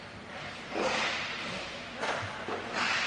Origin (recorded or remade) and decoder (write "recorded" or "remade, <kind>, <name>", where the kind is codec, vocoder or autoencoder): recorded